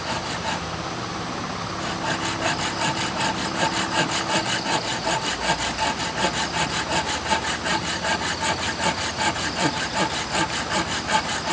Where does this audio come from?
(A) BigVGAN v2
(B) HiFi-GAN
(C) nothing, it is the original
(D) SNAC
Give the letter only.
C